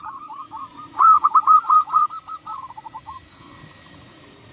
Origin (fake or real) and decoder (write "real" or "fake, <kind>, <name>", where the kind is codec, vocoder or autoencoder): fake, vocoder, Vocos